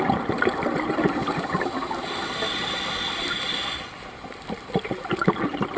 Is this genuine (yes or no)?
yes